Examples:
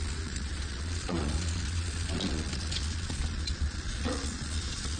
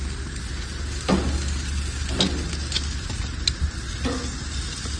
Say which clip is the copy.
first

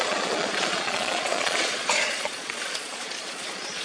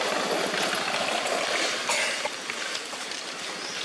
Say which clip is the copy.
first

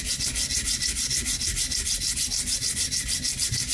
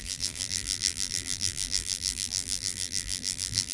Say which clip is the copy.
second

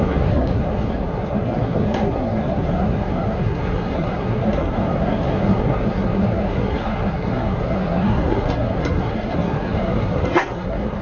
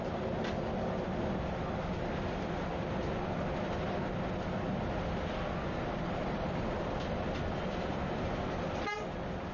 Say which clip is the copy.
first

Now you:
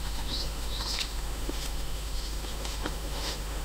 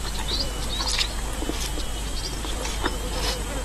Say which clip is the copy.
first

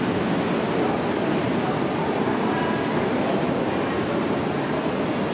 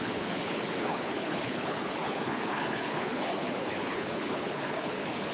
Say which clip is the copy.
second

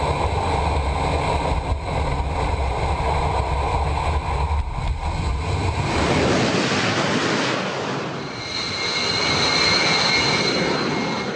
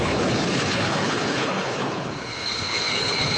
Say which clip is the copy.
second